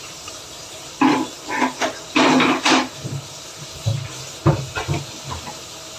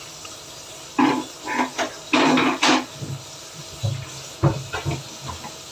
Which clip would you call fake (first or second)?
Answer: first